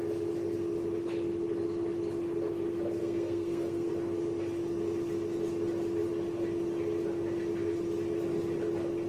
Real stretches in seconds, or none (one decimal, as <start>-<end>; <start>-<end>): 0.0-3.0; 3.9-9.1